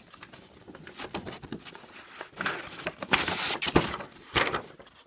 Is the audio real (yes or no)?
yes